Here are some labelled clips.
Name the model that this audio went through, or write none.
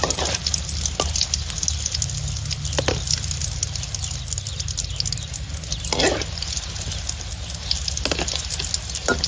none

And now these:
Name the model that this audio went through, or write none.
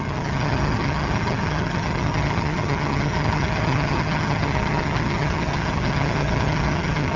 vocoder, HiFi-GAN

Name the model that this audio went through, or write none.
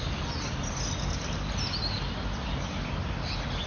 none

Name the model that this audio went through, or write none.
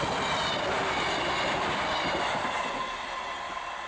none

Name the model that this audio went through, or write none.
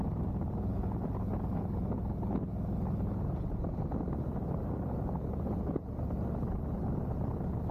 none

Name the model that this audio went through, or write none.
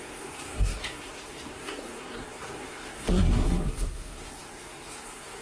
codec, SNAC